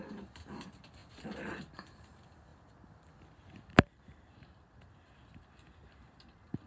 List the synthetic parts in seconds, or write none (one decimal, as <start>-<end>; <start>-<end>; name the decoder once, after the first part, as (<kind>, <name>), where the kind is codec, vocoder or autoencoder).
none